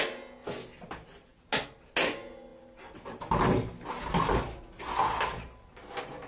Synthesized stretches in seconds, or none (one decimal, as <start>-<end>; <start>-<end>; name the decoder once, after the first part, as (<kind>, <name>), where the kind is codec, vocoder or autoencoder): none